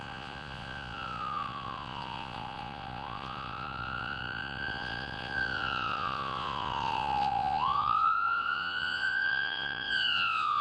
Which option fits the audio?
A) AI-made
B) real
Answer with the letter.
A